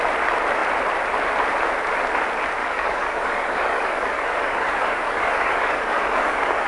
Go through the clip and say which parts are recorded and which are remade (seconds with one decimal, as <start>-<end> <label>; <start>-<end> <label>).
0.0-2.6 recorded; 2.6-6.7 remade